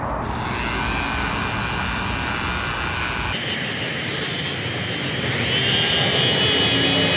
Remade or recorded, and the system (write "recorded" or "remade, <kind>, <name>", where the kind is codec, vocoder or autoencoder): recorded